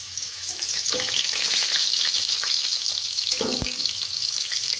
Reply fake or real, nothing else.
fake